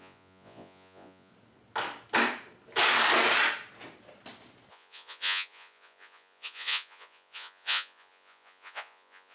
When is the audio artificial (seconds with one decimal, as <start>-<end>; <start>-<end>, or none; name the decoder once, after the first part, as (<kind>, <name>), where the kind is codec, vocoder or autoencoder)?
0.0-1.3 (vocoder, Vocos); 4.7-9.3